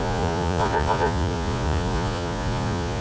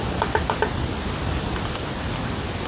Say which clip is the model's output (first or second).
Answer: first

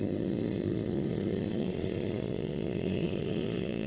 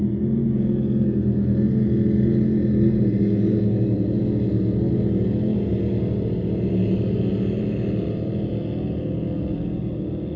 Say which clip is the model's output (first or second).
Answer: first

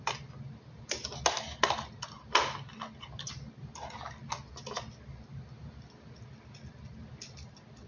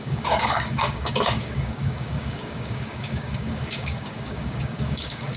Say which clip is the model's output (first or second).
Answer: second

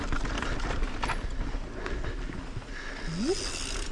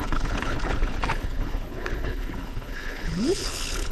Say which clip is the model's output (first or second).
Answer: second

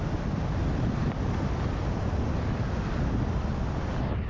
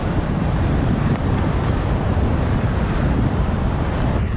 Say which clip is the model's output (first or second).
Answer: second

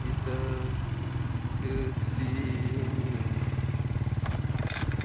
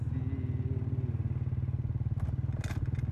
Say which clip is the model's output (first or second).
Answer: first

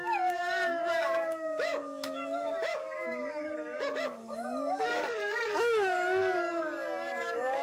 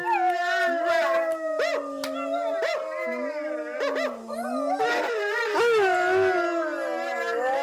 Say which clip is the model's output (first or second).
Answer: first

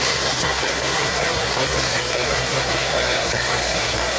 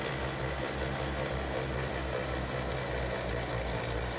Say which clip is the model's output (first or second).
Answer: first